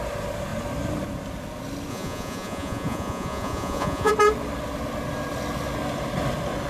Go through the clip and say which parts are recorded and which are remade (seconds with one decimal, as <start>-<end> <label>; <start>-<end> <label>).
0.0-1.9 recorded; 1.9-4.1 remade; 4.1-6.7 recorded